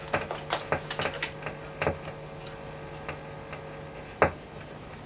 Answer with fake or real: real